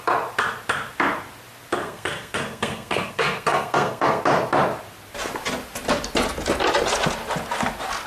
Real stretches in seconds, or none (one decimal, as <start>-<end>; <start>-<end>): 0.0-1.8; 4.2-8.1